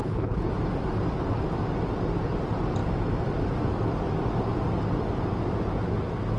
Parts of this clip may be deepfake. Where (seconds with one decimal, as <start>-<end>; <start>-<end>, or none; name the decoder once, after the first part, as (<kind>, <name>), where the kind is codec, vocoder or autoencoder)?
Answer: 0.0-0.5 (codec, HILCodec)